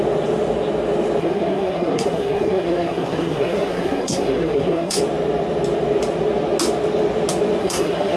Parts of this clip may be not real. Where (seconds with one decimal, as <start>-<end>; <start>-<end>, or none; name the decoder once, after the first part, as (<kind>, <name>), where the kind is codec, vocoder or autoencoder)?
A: 1.2-5.0 (codec, SNAC); 7.6-8.2

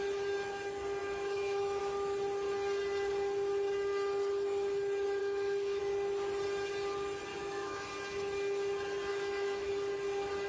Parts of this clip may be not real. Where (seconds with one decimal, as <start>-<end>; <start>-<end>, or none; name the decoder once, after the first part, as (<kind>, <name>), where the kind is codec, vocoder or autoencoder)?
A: 1.0-1.8 (autoencoder, DAC-VAE); 5.2-5.8; 7.3-7.9; 9.1-9.7

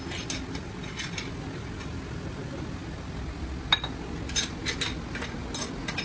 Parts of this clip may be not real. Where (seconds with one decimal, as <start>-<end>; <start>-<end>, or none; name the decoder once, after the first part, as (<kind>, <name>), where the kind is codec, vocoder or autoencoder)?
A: none

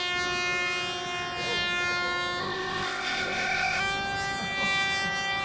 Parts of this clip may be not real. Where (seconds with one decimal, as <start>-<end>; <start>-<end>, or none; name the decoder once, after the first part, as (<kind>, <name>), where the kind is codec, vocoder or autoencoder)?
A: 2.4-3.8 (codec, ZipCodec)

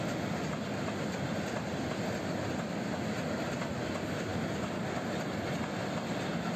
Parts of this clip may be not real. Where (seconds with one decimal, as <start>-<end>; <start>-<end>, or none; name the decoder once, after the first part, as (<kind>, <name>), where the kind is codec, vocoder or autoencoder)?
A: none

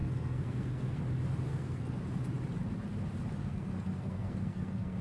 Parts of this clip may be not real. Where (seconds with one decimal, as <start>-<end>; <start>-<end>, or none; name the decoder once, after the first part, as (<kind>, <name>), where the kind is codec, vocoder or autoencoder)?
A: 0.0-1.0 (codec, SNAC); 1.5-2.0; 3.4-5.0

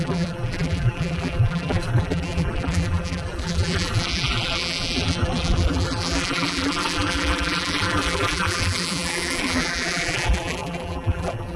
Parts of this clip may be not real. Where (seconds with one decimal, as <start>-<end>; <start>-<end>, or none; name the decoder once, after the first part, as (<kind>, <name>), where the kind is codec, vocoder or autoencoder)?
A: 0.0-11.6 (vocoder, BigVGAN v2)

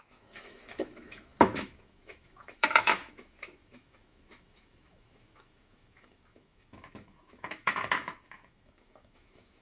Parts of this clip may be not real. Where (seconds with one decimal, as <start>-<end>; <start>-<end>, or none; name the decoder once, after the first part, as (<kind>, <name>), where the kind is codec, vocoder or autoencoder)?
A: 0.0-9.6 (autoencoder, DAC-VAE)